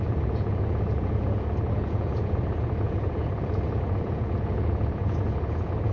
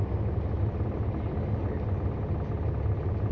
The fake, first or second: first